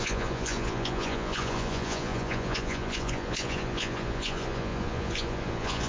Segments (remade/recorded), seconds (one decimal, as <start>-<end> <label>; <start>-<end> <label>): 0.0-5.9 remade

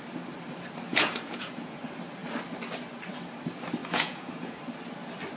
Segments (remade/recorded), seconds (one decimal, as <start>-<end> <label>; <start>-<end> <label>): 0.0-0.9 recorded; 0.9-1.8 remade; 1.8-3.8 recorded; 3.8-4.6 remade; 4.6-5.4 recorded

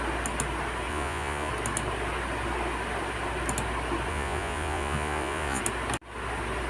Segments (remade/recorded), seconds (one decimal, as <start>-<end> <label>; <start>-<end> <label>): 0.0-0.9 recorded; 0.9-1.5 remade; 1.5-4.1 recorded; 4.1-5.6 remade; 5.6-6.7 recorded

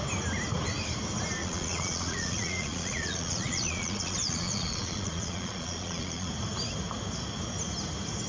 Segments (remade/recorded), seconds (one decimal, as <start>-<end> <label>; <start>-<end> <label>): 0.0-1.4 recorded; 1.4-6.3 remade; 6.3-8.3 recorded

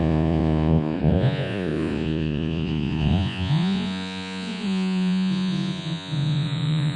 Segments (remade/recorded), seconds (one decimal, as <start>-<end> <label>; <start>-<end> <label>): 0.0-7.0 remade

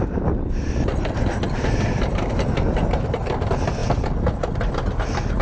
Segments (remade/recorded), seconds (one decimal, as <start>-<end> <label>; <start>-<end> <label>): 0.0-5.4 recorded